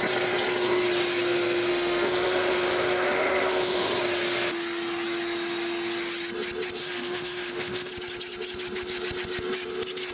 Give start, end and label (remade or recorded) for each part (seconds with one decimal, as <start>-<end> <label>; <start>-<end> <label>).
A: 0.0-1.7 recorded; 1.7-3.9 remade; 3.9-6.8 recorded; 6.8-7.9 remade; 7.9-10.1 recorded